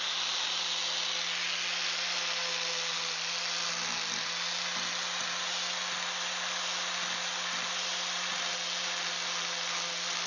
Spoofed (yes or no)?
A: no